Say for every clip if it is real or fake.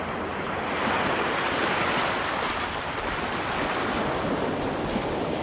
real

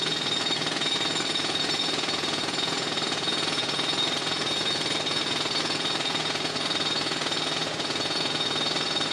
fake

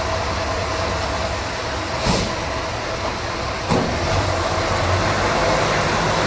real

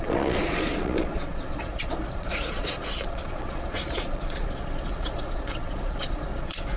fake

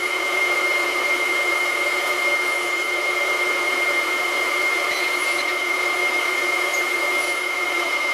fake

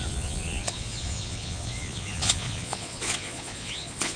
fake